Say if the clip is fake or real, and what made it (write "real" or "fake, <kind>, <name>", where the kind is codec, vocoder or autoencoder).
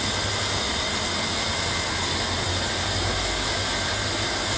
real